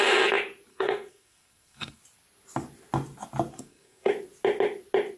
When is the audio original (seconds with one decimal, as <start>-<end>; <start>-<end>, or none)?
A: 0.0-0.7; 2.0-3.5; 4.1-5.2